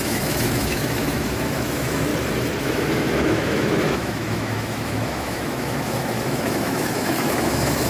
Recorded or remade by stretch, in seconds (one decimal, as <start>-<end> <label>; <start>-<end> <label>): 0.0-2.1 remade; 2.1-2.6 recorded; 2.6-7.9 remade